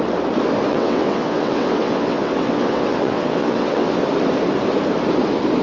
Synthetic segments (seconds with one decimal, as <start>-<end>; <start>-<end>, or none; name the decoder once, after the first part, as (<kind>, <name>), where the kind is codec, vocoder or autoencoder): 0.7-4.0 (vocoder, WaveNeXt)